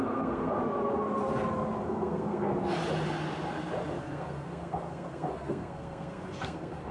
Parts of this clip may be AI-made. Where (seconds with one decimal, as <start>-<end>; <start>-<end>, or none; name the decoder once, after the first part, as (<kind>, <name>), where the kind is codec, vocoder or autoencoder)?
0.0-0.6 (codec, SNAC); 1.8-2.5; 4.0-6.9